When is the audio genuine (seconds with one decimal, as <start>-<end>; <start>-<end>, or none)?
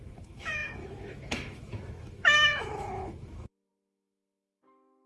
none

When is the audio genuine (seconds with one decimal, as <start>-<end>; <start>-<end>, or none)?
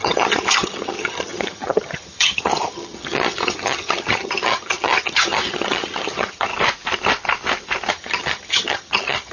6.5-7.9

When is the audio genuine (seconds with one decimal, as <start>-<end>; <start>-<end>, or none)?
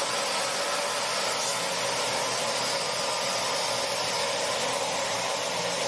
0.0-5.9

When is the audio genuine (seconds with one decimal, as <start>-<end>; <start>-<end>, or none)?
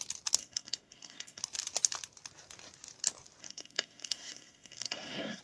0.0-0.4; 1.4-3.4